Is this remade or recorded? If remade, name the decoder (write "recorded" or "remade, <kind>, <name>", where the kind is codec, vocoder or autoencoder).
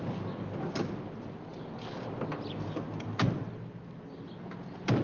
recorded